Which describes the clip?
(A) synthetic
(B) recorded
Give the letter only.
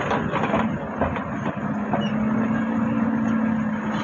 B